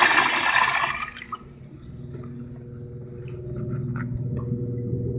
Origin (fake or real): real